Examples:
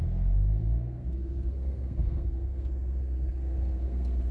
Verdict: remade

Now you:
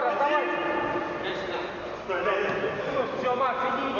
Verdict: recorded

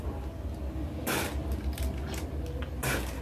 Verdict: recorded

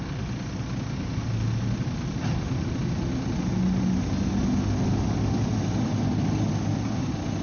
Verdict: recorded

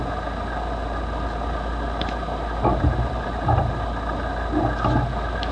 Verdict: recorded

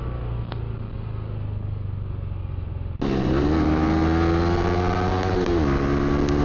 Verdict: recorded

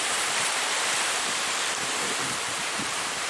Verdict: remade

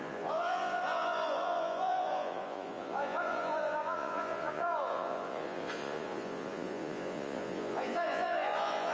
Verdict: remade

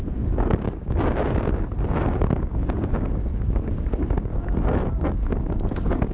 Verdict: remade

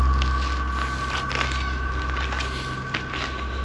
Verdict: recorded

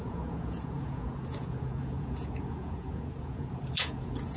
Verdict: remade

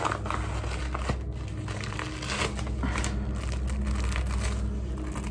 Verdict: recorded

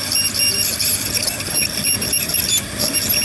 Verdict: recorded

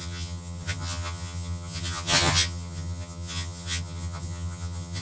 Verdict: remade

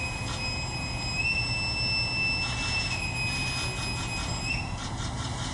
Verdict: recorded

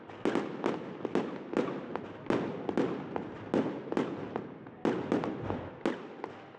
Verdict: recorded